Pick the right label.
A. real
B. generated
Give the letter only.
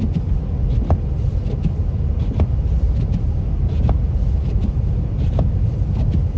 A